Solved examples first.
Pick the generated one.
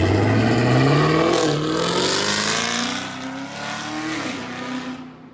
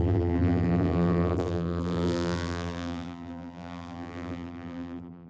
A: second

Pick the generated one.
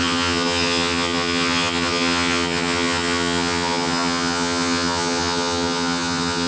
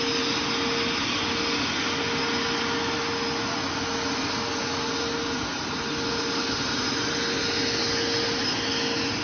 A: first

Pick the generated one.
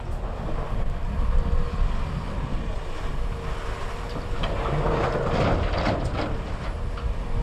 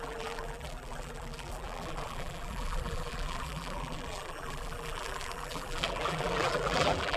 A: second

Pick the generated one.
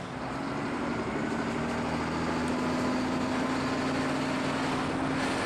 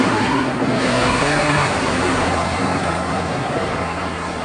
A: second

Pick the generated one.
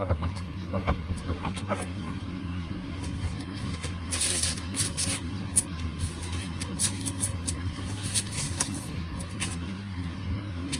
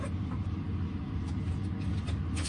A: first